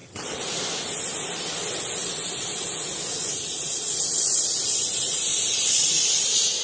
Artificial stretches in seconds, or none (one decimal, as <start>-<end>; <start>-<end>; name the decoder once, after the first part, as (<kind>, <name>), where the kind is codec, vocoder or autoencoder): none